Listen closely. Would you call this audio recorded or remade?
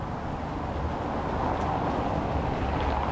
recorded